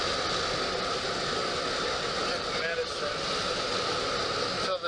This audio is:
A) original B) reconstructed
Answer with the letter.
A